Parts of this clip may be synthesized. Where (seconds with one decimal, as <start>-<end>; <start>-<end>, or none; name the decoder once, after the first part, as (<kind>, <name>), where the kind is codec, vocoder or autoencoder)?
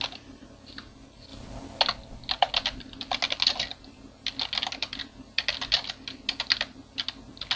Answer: none